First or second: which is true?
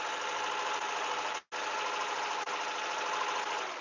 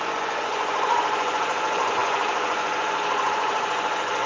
first